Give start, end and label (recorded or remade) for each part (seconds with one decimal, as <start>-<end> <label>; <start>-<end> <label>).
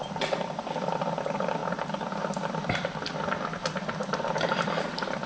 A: 0.0-1.6 remade; 1.6-4.8 recorded; 4.8-5.3 remade